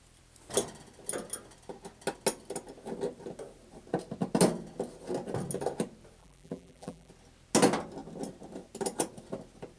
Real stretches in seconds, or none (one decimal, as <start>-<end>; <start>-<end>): 0.0-6.2; 7.1-9.8